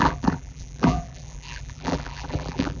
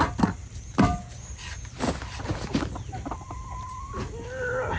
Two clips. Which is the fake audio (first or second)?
first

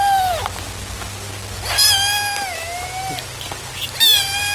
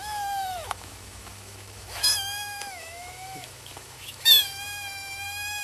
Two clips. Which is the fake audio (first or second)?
second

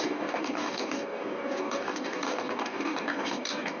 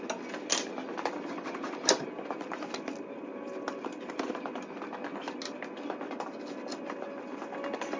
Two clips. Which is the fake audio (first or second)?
first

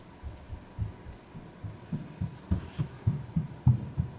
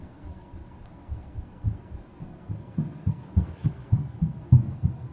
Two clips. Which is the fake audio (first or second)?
second